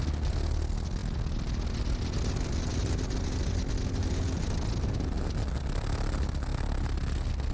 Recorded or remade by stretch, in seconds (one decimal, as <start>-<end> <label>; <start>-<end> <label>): 0.0-7.5 recorded